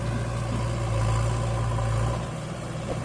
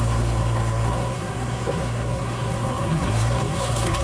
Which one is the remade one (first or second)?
second